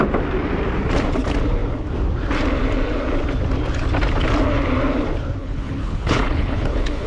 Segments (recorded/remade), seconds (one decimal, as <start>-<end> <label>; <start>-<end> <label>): 0.0-5.4 recorded; 5.4-7.1 remade